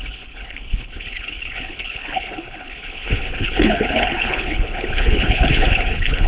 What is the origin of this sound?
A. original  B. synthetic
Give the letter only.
B